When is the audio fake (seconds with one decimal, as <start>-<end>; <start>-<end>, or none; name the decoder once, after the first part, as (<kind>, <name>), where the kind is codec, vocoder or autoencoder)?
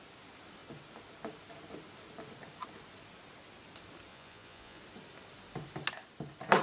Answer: 4.1-4.8 (vocoder, Vocos)